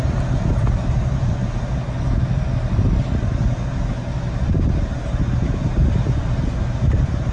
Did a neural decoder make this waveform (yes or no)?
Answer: no